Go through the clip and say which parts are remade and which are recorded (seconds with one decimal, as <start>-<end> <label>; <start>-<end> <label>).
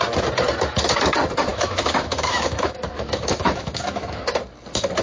0.0-1.5 recorded; 1.5-4.2 remade; 4.2-5.0 recorded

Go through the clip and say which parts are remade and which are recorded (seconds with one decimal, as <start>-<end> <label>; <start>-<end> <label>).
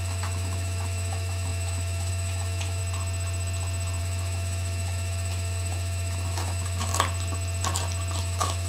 0.0-2.8 remade; 2.8-4.0 recorded; 4.0-6.9 remade; 6.9-8.2 recorded; 8.2-8.7 remade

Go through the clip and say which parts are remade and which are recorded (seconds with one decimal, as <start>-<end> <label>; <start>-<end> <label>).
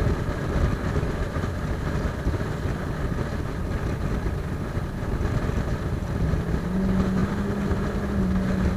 0.0-8.8 recorded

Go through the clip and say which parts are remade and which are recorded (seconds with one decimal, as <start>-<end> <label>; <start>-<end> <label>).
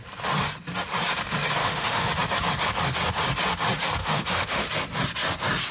0.0-1.6 recorded; 1.6-2.1 remade; 2.1-4.0 recorded; 4.0-4.7 remade; 4.7-5.7 recorded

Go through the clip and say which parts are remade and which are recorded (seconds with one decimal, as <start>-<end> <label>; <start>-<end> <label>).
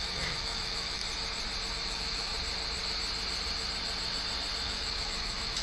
0.0-1.0 remade; 1.0-1.7 recorded; 1.7-2.3 remade; 2.3-4.6 recorded; 4.6-5.6 remade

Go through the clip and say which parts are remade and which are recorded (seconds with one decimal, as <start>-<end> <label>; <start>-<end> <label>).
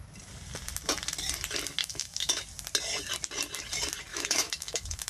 0.0-1.8 recorded; 1.8-2.4 remade; 2.4-4.1 recorded; 4.1-5.1 remade